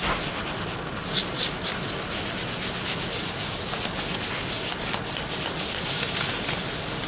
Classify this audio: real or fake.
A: real